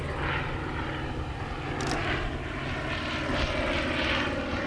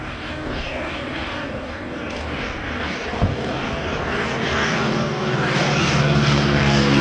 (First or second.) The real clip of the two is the first